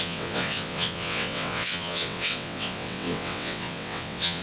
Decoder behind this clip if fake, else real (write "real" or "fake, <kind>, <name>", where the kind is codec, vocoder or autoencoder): fake, vocoder, WaveNeXt